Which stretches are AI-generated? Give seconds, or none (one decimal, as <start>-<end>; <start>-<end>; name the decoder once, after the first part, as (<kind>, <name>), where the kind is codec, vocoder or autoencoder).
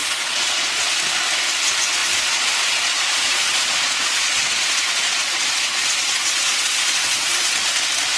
0.0-0.9 (vocoder, Vocos); 2.0-2.5; 2.9-7.5